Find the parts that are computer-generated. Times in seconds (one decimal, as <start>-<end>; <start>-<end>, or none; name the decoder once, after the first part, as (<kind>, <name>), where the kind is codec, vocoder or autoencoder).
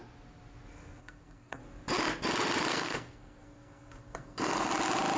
1.0-1.6 (codec, SNAC); 2.7-4.7